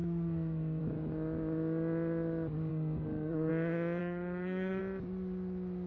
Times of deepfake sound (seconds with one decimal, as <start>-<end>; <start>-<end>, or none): 0.0-0.8; 2.7-3.5; 4.0-4.8